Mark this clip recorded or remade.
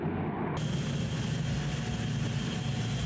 recorded